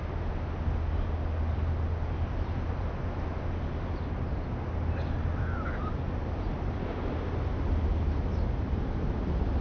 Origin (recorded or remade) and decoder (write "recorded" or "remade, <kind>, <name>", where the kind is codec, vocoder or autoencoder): recorded